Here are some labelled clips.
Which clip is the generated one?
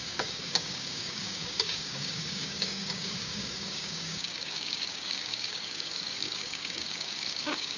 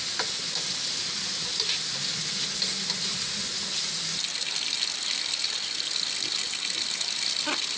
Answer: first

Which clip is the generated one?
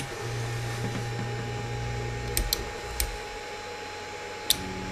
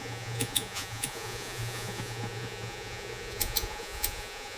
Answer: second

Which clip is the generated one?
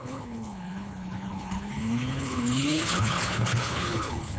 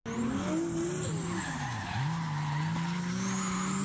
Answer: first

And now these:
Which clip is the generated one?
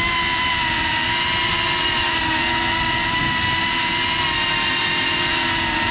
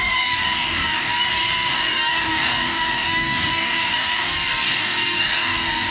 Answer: second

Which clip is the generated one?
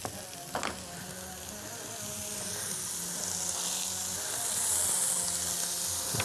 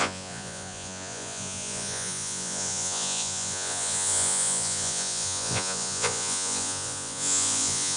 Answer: second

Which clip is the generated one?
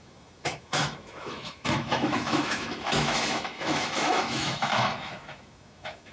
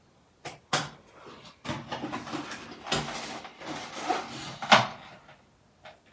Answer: first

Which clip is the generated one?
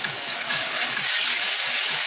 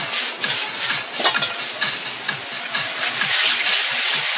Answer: first